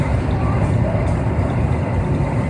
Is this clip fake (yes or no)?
no